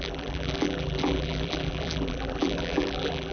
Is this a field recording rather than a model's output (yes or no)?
no